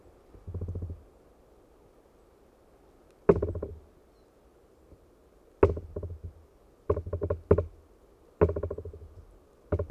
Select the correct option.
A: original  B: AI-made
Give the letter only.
A